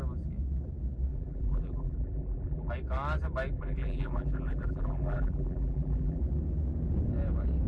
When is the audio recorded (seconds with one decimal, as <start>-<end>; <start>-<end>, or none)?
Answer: 0.0-1.1; 2.7-3.5; 6.2-7.7